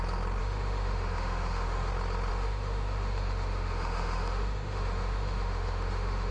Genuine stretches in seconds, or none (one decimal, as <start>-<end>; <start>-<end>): 0.0-0.4; 1.9-2.3